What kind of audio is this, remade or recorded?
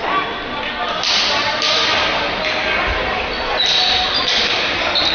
recorded